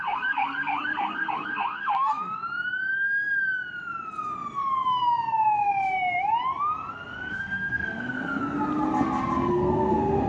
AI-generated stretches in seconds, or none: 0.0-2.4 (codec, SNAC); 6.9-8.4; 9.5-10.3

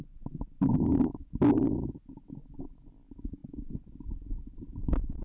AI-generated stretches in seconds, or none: none